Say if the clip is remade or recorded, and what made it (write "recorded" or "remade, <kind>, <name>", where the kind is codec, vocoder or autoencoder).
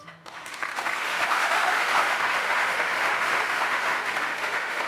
remade, autoencoder, DAC-VAE